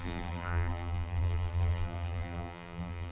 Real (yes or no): no